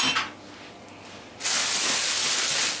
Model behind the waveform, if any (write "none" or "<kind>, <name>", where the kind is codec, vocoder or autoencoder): none